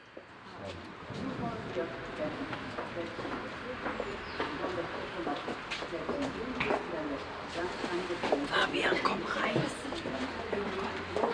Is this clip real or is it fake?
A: real